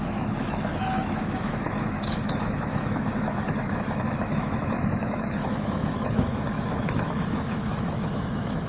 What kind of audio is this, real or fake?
fake